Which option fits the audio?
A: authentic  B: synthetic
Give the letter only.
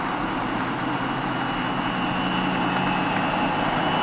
A